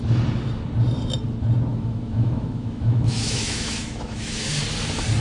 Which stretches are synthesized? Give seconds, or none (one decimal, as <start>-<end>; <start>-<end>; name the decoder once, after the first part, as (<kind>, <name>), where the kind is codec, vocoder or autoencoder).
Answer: 1.7-4.5 (autoencoder, DAC-VAE)